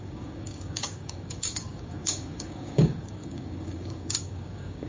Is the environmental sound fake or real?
fake